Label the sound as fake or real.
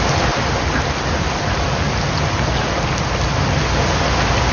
real